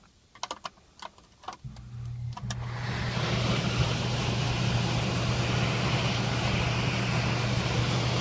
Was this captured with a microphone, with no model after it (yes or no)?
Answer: yes